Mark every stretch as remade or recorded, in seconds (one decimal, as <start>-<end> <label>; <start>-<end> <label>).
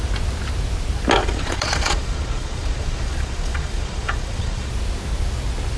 0.0-1.2 recorded; 1.2-4.7 remade; 4.7-5.8 recorded